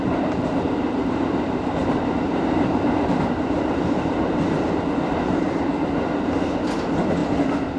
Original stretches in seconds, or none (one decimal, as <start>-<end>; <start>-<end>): 0.0-1.0; 5.7-7.8

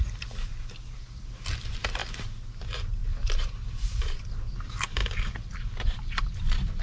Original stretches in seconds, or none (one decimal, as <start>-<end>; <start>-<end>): 0.5-1.5; 5.0-5.8